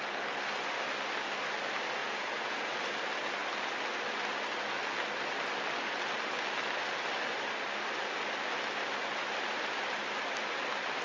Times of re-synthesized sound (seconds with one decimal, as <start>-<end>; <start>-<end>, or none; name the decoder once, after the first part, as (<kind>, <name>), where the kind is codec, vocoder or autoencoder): 2.0-2.7 (vocoder, Vocos)

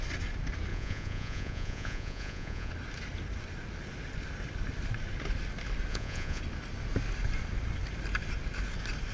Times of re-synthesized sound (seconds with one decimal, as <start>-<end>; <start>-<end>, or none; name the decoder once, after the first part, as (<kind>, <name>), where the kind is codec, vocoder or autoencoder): 0.7-2.7 (vocoder, Vocos); 5.9-6.4

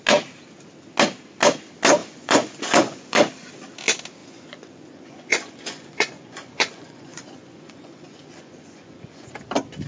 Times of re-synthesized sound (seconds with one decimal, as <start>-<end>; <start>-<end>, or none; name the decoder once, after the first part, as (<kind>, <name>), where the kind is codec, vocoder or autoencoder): 2.0-3.3 (vocoder, Vocos); 4.2-9.3

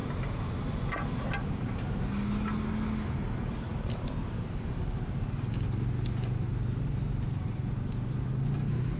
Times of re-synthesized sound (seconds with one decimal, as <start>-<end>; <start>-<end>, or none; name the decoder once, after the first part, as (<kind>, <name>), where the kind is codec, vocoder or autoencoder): none

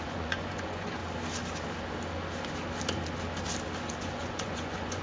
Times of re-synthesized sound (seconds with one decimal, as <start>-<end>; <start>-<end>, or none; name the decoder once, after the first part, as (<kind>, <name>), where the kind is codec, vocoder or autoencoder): 0.0-1.0 (vocoder, Vocos); 4.0-5.0